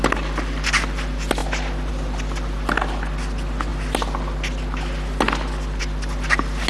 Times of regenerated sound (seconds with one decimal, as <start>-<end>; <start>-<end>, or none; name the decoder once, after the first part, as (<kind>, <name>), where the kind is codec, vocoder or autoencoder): none